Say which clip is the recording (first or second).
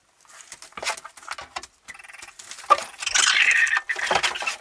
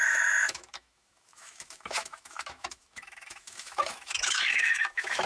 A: first